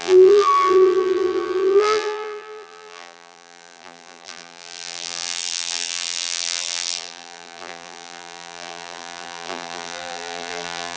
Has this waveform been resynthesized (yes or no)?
yes